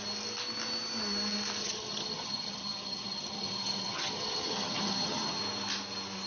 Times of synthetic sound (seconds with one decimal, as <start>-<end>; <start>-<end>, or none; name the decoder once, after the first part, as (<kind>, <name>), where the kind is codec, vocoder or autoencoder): 1.6-5.4 (vocoder, HiFi-GAN)